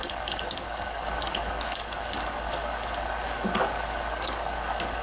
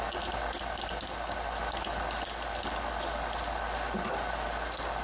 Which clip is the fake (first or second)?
first